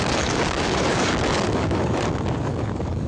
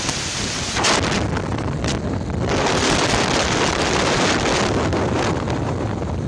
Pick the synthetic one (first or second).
first